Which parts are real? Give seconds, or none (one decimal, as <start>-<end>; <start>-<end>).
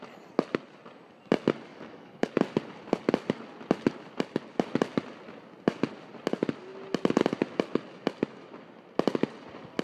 0.0-1.7; 2.3-9.8